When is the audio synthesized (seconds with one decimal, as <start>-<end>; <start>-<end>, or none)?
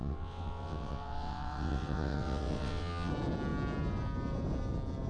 0.0-3.1